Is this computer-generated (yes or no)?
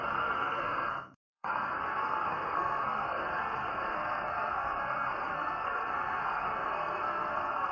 yes